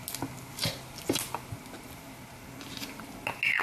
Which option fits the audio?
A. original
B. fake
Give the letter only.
A